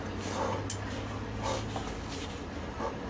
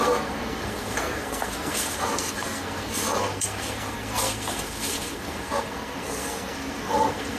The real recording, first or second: first